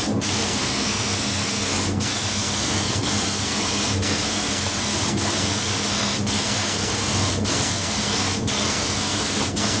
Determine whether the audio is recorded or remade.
remade